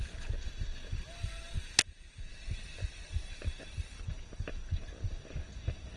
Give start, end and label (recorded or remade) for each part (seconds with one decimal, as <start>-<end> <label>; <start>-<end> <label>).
0.0-2.3 recorded; 2.3-4.0 remade; 4.0-6.0 recorded